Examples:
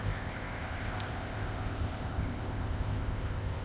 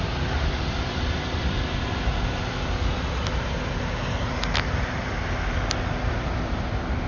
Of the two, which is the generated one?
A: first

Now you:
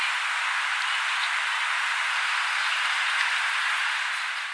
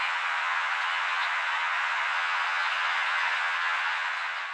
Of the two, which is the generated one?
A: second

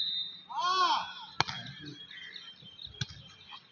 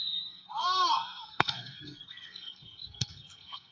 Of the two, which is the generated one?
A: second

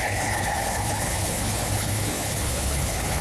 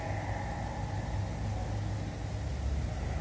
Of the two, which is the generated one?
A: first